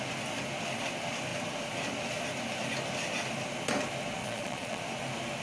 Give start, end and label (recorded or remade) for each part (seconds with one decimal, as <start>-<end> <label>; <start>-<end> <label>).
0.0-4.2 recorded; 4.2-4.8 remade; 4.8-5.4 recorded